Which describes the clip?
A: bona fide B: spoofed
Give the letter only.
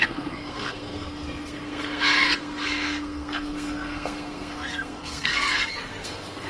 B